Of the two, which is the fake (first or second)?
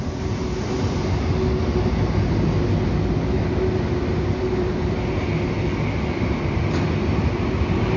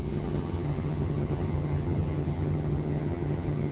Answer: second